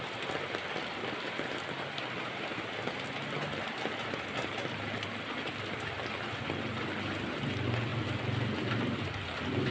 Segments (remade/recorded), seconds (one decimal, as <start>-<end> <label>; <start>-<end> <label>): 0.0-9.7 recorded